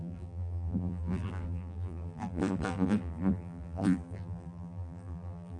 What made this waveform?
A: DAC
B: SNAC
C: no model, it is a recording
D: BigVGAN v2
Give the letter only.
D